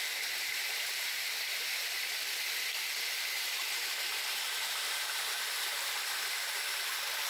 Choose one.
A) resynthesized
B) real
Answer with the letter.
B